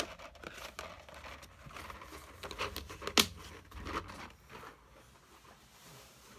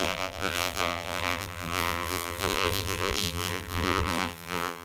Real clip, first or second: first